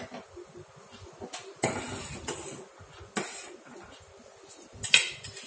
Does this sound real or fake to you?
real